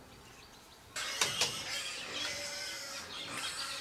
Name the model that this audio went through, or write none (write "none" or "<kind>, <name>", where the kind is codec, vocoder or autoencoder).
none